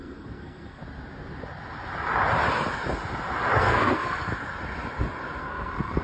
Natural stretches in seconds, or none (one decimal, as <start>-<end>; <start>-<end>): 0.8-3.6; 4.3-5.4